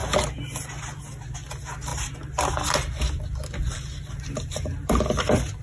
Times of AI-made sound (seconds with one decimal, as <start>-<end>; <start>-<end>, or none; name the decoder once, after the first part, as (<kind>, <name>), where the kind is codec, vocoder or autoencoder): none